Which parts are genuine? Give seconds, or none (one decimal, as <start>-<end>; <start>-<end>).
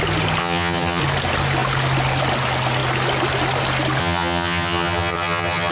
0.0-0.4; 1.0-4.0